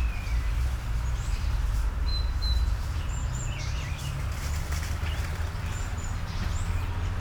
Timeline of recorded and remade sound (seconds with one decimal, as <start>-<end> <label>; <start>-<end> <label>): 0.0-5.9 remade; 5.9-7.2 recorded